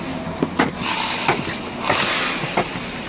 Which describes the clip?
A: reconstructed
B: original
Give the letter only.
B